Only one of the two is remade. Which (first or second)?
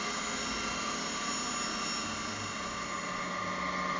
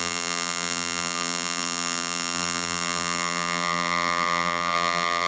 second